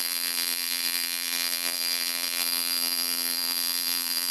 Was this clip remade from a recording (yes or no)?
yes